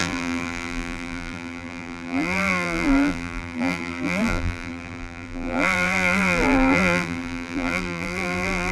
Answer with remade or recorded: remade